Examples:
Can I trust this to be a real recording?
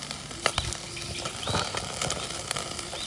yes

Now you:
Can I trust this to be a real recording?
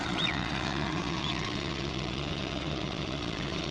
no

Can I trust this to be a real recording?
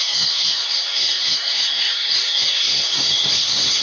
no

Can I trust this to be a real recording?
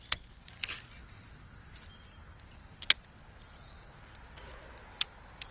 yes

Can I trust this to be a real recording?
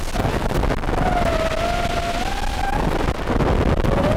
yes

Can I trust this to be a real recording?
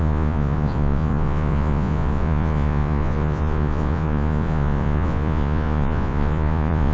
no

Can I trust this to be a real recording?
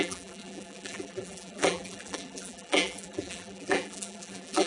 no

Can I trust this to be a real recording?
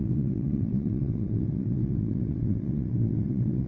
no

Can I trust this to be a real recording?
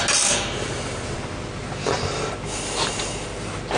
yes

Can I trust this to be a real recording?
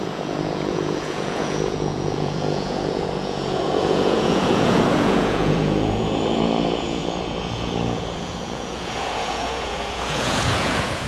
no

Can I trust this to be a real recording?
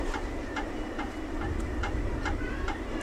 no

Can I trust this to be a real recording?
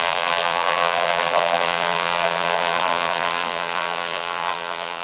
no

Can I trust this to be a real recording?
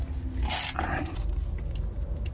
yes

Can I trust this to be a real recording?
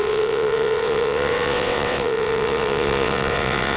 no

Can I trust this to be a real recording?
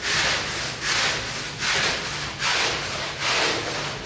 yes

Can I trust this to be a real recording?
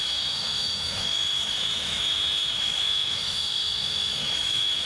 no